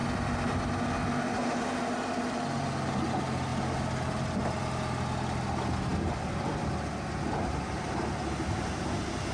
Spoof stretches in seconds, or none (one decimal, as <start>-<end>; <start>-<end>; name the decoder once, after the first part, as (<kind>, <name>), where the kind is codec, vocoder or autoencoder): none